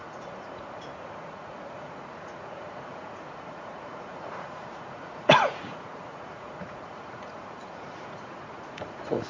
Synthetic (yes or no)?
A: yes